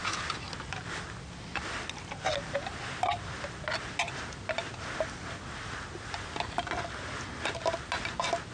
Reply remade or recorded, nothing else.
recorded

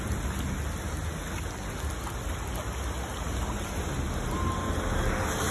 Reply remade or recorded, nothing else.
recorded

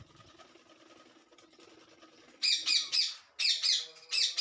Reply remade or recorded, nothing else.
recorded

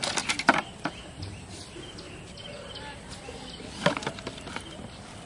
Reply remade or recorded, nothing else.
remade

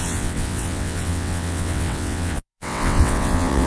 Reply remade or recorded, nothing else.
remade